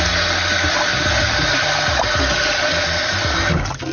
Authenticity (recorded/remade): recorded